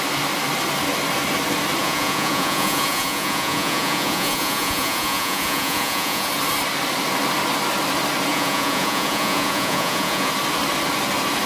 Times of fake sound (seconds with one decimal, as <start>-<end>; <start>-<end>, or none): 1.8-6.3; 8.3-10.3